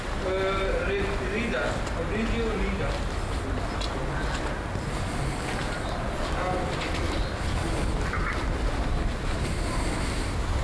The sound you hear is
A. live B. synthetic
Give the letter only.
A